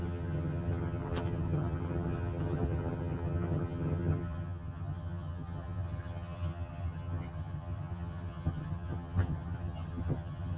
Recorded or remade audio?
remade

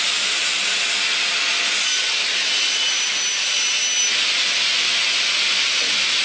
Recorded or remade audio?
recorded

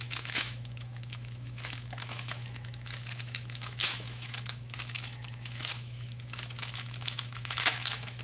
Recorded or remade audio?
remade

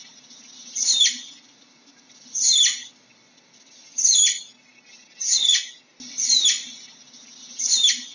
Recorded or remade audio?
recorded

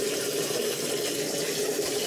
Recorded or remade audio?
recorded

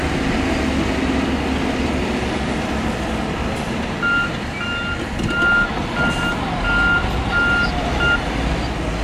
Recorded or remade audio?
recorded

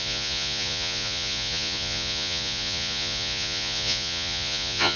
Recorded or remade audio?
remade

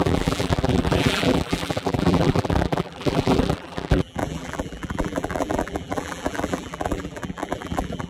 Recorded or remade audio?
remade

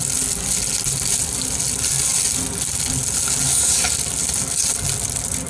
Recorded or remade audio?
recorded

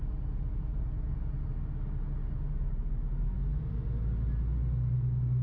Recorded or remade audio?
recorded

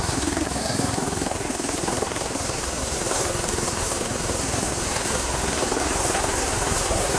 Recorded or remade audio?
remade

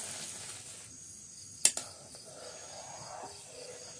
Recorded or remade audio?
recorded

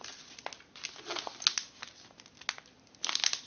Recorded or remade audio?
recorded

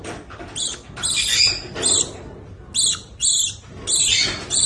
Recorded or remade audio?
recorded